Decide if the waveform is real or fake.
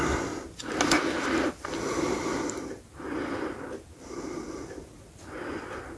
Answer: real